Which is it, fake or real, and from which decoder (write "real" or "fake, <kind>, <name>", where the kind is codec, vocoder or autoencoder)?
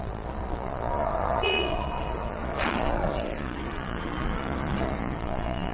fake, vocoder, Vocos